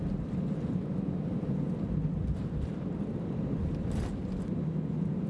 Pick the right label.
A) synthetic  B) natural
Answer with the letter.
A